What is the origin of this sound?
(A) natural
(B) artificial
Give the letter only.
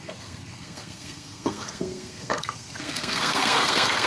B